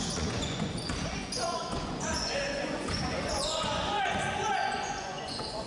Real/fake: fake